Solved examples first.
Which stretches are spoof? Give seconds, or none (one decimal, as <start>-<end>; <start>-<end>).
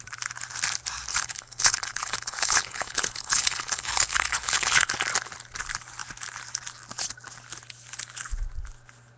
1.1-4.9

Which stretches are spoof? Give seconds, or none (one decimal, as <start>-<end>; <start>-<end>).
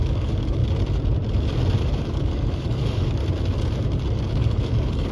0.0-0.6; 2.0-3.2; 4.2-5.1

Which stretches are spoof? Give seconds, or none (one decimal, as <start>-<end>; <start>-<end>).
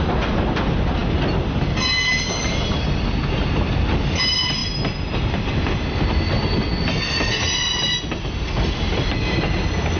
8.9-10.0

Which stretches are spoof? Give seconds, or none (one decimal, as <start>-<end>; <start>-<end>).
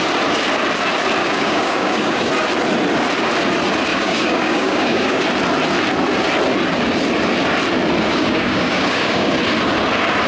1.2-2.3; 3.9-5.2; 8.1-9.3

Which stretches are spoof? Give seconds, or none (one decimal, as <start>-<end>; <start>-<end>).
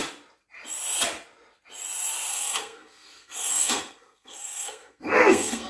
2.3-5.7